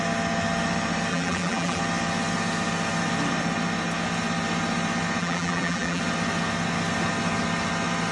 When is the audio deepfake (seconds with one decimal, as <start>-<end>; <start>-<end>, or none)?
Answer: 1.1-1.8; 5.2-6.0